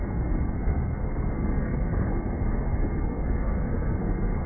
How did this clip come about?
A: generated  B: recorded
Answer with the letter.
A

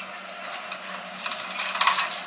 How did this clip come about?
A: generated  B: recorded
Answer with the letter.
B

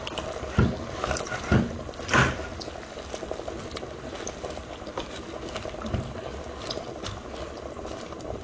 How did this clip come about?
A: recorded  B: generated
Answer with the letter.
A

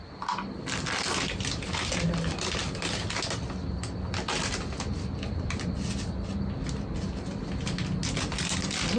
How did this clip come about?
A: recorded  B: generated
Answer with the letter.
A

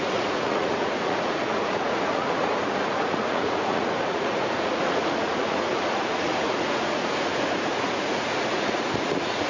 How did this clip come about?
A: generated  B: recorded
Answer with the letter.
A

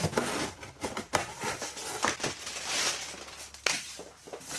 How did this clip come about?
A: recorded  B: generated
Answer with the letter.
A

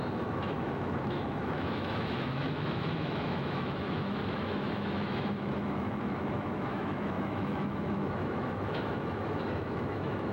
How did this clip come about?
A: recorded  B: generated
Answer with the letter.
B